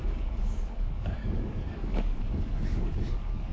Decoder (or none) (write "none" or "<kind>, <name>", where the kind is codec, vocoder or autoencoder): codec, DAC